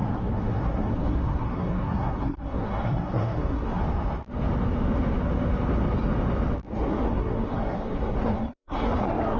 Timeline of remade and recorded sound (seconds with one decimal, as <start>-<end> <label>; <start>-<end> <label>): 0.0-3.8 remade; 3.8-6.9 recorded; 6.9-9.4 remade